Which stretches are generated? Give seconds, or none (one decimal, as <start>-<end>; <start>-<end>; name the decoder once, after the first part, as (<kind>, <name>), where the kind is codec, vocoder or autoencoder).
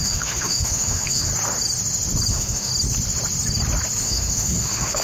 0.0-1.3 (autoencoder, DAC-VAE); 2.3-2.7; 4.0-5.0